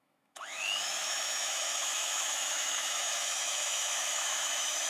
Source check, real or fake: fake